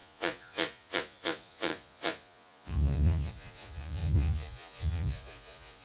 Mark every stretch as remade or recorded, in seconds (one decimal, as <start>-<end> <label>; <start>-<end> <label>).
0.0-5.8 remade